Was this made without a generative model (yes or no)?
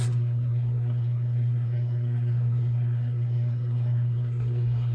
no